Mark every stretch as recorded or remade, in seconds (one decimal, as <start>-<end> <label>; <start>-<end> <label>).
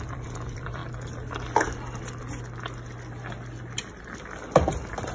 0.0-0.8 remade; 0.8-3.9 recorded; 3.9-5.1 remade